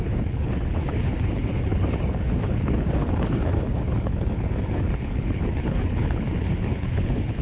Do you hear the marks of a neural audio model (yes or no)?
yes